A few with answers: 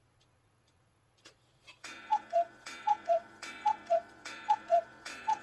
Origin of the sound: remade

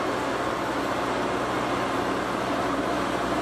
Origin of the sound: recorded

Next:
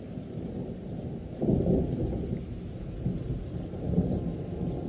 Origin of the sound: recorded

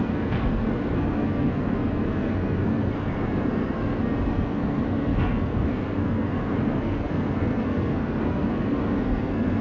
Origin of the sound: remade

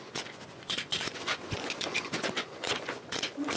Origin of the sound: remade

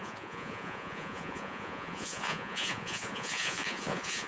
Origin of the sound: remade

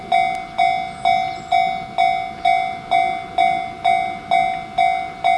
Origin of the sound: recorded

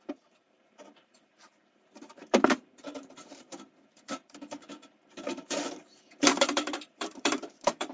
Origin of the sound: remade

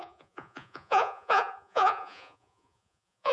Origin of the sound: remade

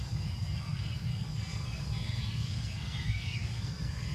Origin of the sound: remade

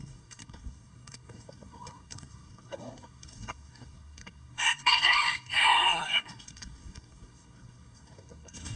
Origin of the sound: remade